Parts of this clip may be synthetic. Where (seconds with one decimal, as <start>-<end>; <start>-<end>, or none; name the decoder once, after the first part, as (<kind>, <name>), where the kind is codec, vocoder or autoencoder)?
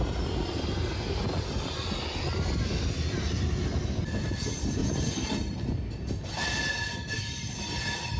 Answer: none